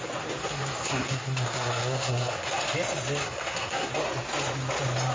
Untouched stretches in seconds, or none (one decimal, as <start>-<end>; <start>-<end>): 0.0-0.4; 2.6-3.2; 3.9-5.1